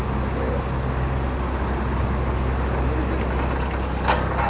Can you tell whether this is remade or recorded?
recorded